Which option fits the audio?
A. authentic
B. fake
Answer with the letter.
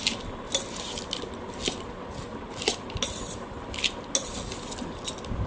A